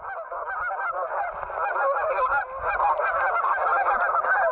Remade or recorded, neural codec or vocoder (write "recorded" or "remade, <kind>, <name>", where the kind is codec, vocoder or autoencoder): recorded